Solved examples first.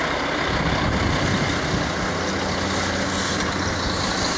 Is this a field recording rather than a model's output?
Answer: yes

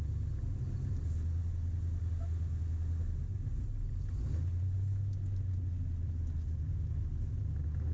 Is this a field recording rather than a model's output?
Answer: yes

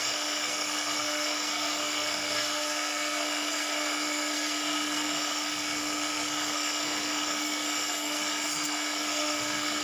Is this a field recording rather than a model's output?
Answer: no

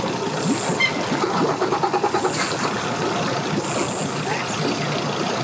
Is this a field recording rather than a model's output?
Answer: yes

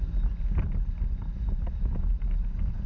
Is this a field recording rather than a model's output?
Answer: yes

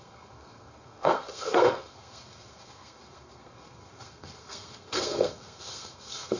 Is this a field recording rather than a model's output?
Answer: no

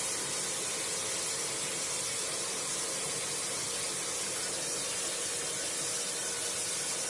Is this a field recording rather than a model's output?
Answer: yes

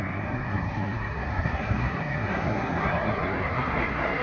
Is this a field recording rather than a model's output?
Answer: no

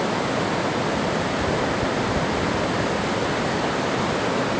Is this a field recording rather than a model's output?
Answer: yes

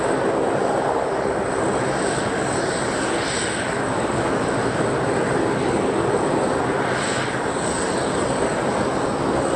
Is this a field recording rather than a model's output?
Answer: yes